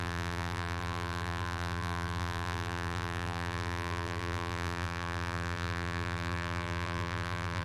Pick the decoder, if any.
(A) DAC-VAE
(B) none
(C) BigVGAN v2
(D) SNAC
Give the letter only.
C